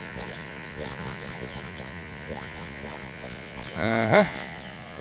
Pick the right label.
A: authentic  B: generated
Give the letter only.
B